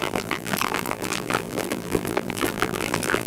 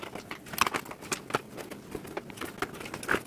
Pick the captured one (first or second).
second